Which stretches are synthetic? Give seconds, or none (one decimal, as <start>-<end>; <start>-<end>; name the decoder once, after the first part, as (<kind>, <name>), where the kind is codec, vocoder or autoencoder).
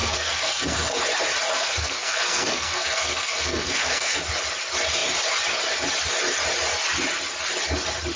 0.0-1.0 (codec, SNAC); 1.5-4.2